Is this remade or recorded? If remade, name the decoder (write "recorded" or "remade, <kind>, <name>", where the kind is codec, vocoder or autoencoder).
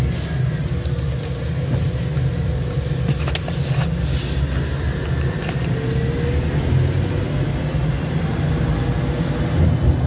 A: recorded